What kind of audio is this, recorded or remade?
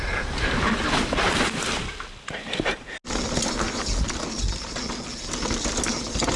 recorded